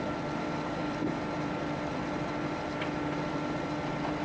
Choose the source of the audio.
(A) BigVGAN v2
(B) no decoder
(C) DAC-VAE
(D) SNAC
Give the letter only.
A